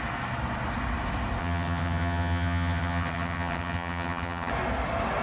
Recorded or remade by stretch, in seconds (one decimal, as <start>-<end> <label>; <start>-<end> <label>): 0.0-1.4 recorded; 1.4-4.5 remade; 4.5-5.2 recorded